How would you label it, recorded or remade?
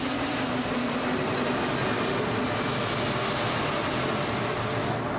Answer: recorded